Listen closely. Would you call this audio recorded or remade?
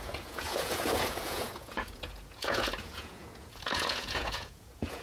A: remade